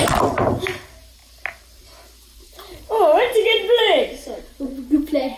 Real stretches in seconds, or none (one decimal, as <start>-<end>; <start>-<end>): 0.0-5.4